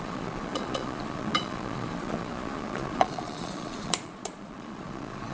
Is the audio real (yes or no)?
no